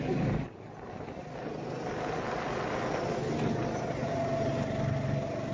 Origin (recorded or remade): recorded